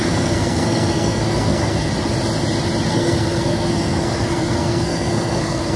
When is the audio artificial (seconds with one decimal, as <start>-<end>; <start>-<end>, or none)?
0.0-1.9; 2.9-5.8

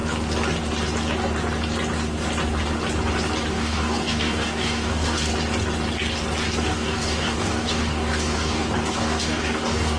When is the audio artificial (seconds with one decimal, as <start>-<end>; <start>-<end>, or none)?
3.5-5.3; 6.6-10.0

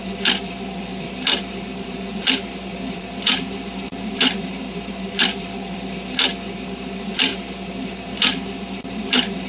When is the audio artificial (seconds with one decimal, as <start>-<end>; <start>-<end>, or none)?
0.0-9.5

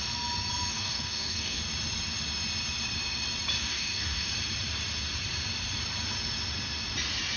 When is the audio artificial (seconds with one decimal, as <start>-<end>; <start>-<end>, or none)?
0.7-1.6; 3.6-4.3

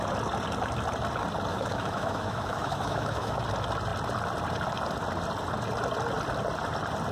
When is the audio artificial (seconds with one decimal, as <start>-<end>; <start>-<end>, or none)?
1.5-3.4

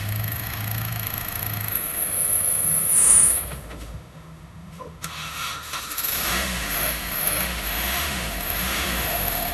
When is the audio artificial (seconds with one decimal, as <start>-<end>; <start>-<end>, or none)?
0.0-9.5